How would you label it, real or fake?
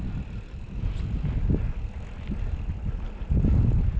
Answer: real